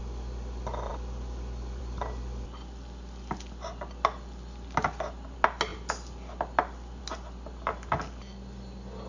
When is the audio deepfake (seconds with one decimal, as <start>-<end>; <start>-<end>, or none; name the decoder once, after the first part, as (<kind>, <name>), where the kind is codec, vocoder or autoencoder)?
none